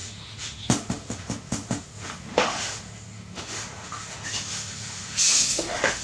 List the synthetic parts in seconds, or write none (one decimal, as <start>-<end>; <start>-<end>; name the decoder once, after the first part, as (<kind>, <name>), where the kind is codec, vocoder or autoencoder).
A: 0.0-6.0 (autoencoder, DAC-VAE)